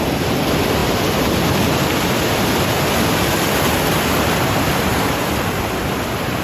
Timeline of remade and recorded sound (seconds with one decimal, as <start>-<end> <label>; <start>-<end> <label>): 0.0-6.4 recorded